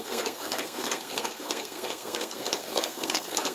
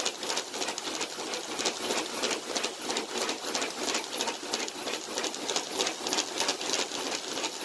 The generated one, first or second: first